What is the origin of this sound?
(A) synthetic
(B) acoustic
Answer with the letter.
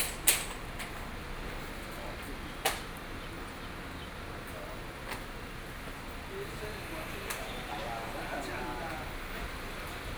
B